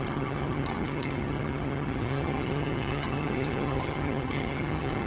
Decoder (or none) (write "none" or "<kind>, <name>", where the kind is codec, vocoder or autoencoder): vocoder, HiFi-GAN